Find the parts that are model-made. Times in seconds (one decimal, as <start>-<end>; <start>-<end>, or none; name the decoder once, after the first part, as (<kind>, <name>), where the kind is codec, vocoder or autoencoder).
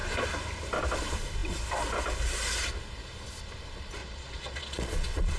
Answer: 4.0-5.4 (vocoder, Vocos)